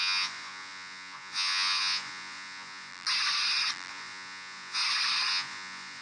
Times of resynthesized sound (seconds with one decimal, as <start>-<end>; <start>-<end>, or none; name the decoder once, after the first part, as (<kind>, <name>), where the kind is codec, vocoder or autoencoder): 0.0-2.9 (vocoder, Vocos); 3.9-4.8; 5.3-6.0